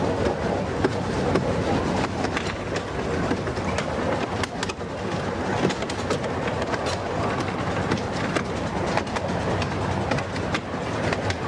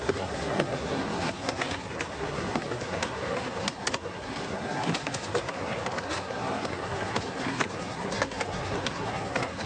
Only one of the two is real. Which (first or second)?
first